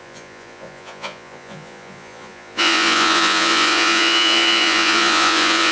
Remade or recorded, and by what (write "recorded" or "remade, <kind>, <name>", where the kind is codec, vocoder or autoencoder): remade, vocoder, Vocos